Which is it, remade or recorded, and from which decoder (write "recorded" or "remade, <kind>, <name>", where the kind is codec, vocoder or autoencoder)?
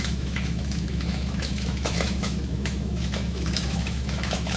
remade, autoencoder, DAC-VAE